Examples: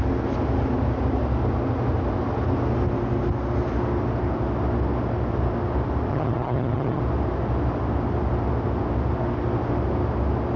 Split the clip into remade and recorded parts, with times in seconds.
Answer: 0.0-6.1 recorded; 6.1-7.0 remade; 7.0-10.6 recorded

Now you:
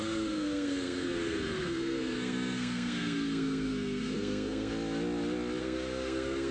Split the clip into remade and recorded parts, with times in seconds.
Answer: 0.0-4.7 remade; 4.7-5.6 recorded; 5.6-6.5 remade

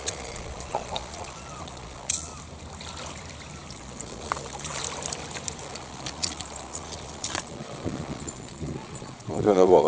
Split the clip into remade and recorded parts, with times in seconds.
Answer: 0.0-2.3 remade; 2.3-3.7 recorded; 3.7-4.8 remade; 4.8-5.6 recorded; 5.6-9.9 remade

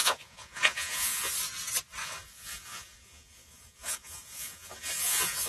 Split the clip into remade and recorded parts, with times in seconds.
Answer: 0.0-1.3 remade; 1.3-2.0 recorded; 2.0-5.5 remade

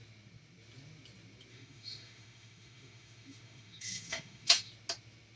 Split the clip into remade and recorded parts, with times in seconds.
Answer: 0.0-1.5 recorded; 1.5-4.7 remade; 4.7-5.4 recorded

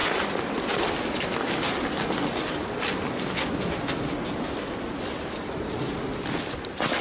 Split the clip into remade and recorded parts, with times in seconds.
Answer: 0.0-7.0 recorded